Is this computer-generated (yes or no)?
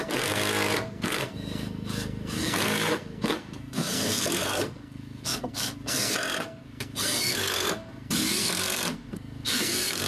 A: yes